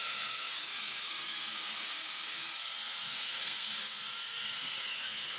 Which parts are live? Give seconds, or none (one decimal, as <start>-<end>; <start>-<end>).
none